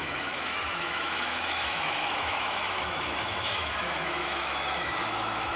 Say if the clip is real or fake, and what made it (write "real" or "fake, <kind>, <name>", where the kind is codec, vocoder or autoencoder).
fake, autoencoder, DAC-VAE